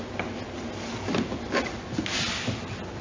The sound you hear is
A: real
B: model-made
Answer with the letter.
A